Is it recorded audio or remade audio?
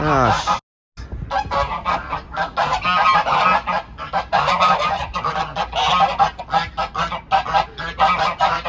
recorded